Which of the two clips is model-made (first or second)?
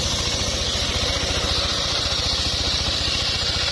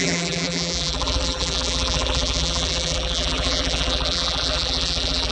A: second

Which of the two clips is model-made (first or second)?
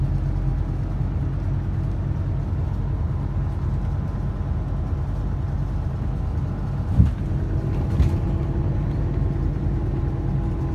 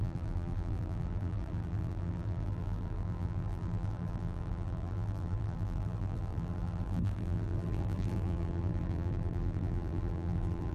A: second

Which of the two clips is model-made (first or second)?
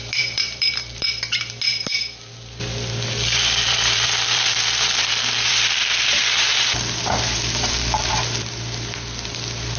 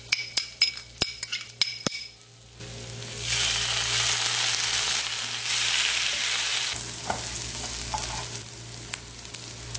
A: first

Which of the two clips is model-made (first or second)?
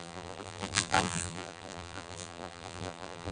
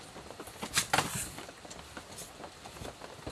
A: first